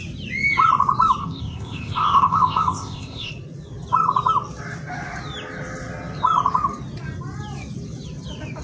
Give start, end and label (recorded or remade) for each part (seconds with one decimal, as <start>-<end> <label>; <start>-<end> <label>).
0.0-1.2 recorded; 1.2-3.3 remade; 3.3-8.6 recorded